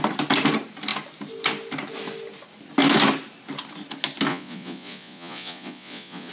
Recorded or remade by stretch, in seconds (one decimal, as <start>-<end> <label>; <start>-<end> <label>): 0.0-4.3 recorded; 4.3-6.3 remade